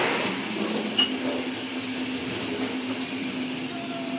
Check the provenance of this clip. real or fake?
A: real